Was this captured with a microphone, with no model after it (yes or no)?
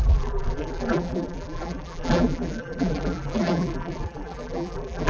no